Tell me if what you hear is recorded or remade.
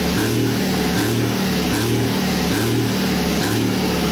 recorded